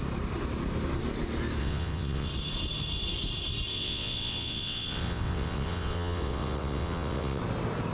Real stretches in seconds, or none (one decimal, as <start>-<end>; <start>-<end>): 0.0-1.6; 2.3-3.7; 7.4-7.9